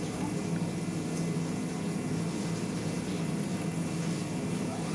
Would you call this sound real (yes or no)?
yes